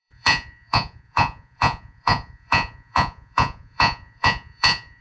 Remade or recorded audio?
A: remade